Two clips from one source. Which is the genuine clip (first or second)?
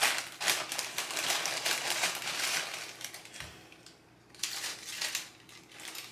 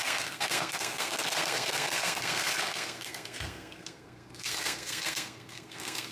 first